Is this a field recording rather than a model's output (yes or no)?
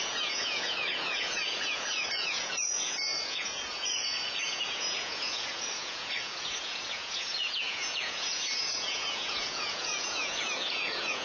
no